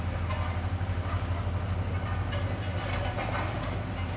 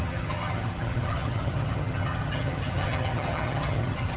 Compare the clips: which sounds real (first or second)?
first